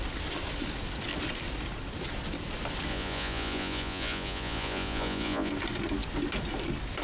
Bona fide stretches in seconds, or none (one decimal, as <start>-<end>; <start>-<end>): 0.0-2.9; 5.5-7.0